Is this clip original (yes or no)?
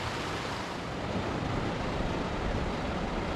yes